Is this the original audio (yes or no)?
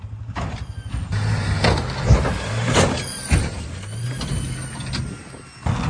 yes